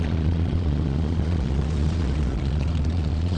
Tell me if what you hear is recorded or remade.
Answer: remade